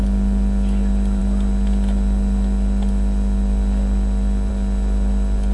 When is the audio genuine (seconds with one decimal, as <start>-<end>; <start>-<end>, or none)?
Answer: 0.0-5.5